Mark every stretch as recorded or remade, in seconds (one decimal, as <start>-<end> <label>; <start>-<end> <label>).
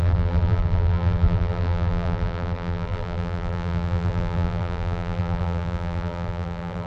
0.0-6.9 remade